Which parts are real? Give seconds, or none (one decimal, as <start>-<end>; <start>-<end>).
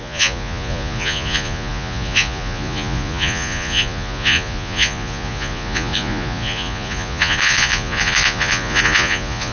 none